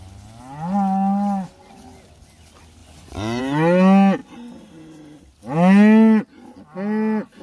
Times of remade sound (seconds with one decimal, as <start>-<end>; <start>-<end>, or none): 2.8-3.4